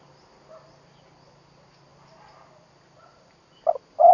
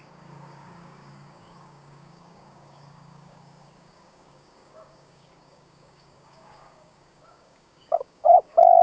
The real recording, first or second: first